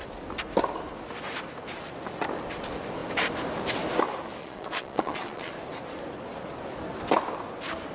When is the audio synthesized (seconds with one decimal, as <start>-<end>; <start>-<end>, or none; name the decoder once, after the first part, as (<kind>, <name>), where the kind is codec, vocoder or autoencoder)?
4.4-5.5 (vocoder, Vocos)